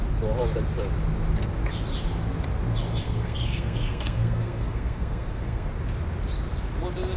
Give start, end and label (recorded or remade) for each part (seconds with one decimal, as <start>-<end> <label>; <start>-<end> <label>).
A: 0.0-3.0 recorded; 3.0-5.7 remade; 5.7-7.2 recorded